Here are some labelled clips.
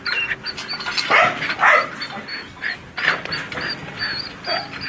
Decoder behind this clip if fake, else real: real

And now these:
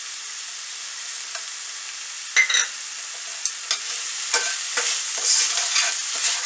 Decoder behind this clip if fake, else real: real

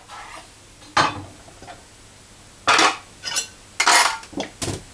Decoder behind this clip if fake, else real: real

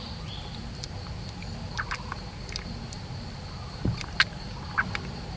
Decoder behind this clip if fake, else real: real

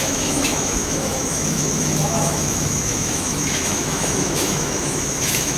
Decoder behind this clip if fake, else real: fake, autoencoder, DAC-VAE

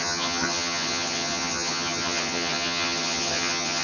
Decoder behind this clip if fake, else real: fake, vocoder, HiFi-GAN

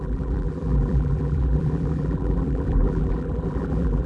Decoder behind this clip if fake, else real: fake, vocoder, BigVGAN v2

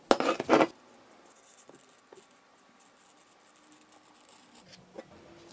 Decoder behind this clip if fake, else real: real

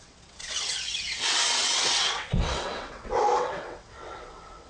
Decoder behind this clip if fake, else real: fake, vocoder, WaveNeXt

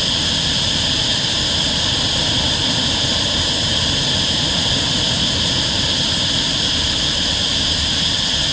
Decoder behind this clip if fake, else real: real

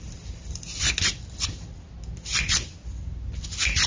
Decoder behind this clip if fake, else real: real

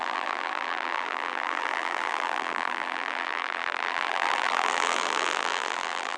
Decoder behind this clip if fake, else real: fake, vocoder, BigVGAN v2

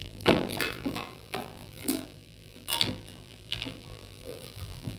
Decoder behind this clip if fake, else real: fake, vocoder, BigVGAN v2